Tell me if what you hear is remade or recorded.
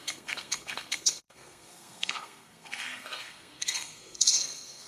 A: remade